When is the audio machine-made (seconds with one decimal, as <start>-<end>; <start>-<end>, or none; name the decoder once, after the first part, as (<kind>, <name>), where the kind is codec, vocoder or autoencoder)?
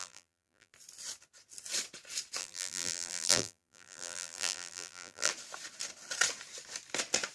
0.0-0.7 (vocoder, BigVGAN v2); 2.4-5.3